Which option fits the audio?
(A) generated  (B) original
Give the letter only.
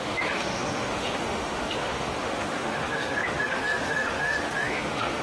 A